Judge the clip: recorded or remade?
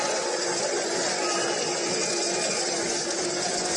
remade